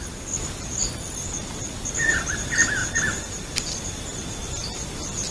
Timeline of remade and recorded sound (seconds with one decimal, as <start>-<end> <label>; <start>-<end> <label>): 0.0-5.3 recorded